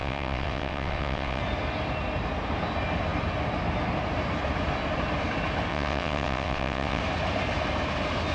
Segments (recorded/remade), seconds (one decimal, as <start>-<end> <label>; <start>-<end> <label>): 0.0-1.4 remade; 1.4-5.7 recorded; 5.7-7.0 remade; 7.0-8.3 recorded

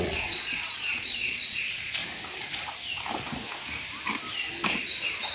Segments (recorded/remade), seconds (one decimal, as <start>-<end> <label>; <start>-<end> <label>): 0.0-2.0 remade; 2.0-5.3 recorded

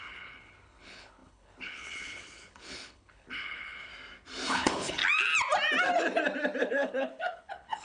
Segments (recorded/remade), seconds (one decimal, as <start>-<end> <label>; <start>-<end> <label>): 0.0-3.9 remade; 3.9-4.5 recorded; 4.5-5.0 remade; 5.0-6.6 recorded; 6.6-7.8 remade

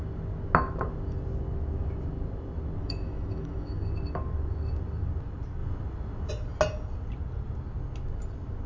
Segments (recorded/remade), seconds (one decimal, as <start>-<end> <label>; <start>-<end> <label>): 0.0-2.8 recorded; 2.8-3.9 remade; 3.9-8.7 recorded